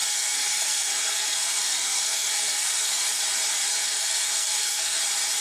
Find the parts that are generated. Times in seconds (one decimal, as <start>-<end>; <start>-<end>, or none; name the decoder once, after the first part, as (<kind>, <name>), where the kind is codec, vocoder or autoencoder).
0.0-3.2 (codec, SNAC); 3.7-5.0